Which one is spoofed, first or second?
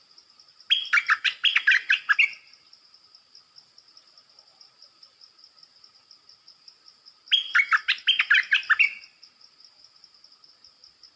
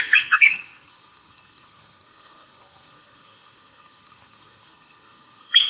second